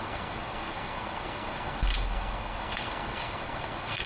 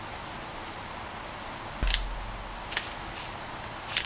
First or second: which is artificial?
first